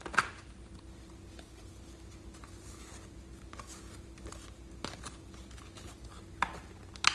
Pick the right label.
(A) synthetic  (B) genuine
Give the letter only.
B